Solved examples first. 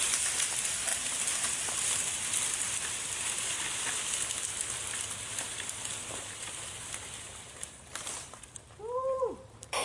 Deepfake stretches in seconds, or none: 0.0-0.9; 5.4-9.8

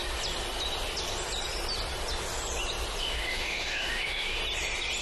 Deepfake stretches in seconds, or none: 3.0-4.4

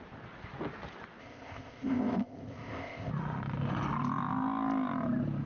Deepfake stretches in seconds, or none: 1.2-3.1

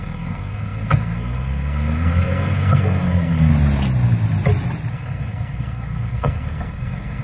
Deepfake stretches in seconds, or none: 0.0-3.5; 4.9-7.2